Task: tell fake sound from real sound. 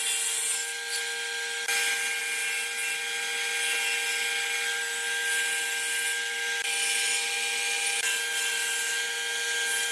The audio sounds real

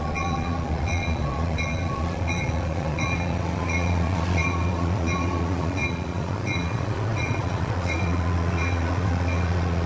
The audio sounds fake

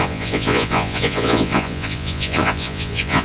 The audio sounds fake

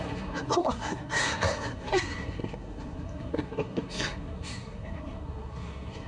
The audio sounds fake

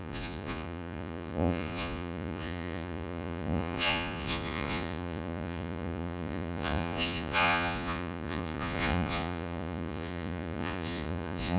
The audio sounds fake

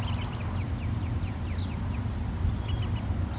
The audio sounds real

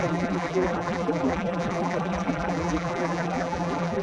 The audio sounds fake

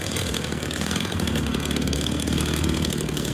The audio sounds fake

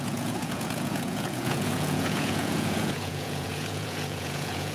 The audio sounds fake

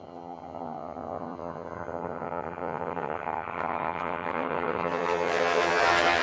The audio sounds fake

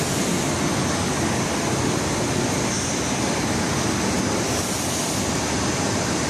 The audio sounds real